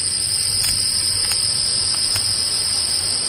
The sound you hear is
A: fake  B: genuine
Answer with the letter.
A